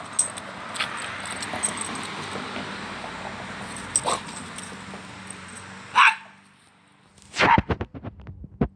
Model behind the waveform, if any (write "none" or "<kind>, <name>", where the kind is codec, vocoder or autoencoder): none